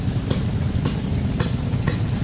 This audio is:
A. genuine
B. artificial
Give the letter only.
A